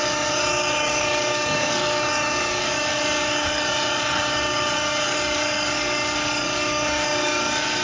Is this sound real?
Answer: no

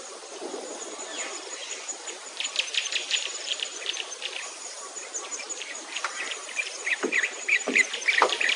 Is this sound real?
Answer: no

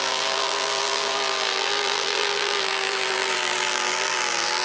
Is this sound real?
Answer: no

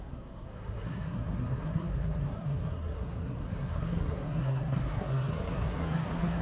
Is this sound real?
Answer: no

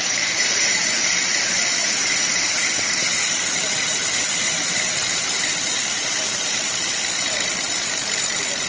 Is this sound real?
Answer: no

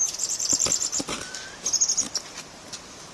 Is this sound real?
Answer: yes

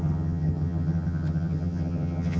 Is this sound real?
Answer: no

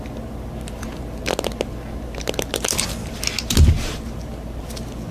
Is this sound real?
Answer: yes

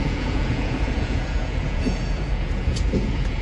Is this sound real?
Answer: no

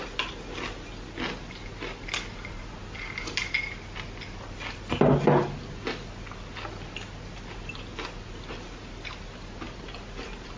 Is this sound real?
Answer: yes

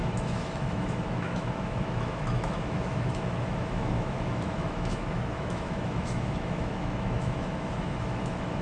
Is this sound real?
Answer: no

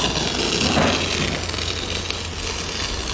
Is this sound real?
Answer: yes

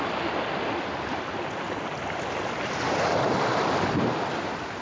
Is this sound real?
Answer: yes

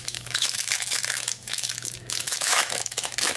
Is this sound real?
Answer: no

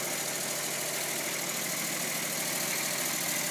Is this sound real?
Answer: yes